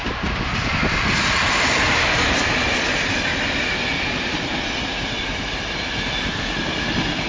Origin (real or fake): real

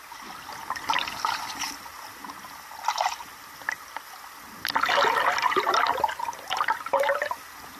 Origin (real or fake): real